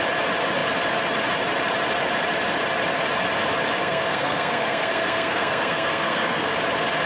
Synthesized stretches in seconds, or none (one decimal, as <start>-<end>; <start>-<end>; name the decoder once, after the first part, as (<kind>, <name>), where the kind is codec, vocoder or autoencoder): 3.8-6.5 (codec, SNAC)